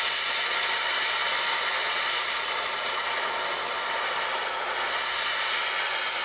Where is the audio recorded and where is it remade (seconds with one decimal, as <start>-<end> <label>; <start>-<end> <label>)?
0.0-6.2 recorded